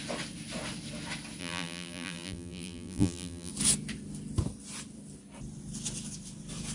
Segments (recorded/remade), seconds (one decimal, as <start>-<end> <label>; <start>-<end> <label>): 0.0-1.4 recorded; 1.4-3.5 remade; 3.5-6.7 recorded